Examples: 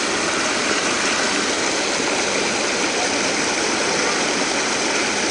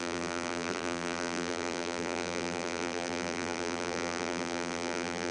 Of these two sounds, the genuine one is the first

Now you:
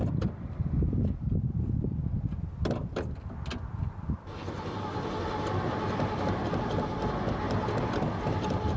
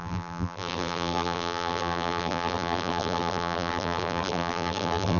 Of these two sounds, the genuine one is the first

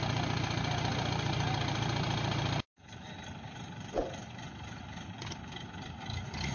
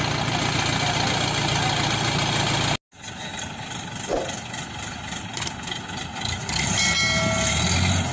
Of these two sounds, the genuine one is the second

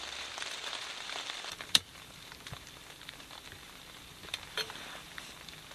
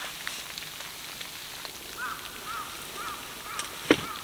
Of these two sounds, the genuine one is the second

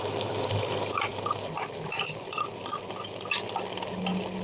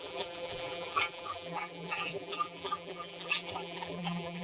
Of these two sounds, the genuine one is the first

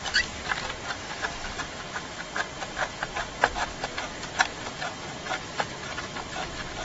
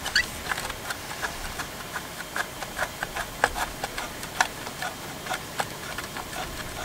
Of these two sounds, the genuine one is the second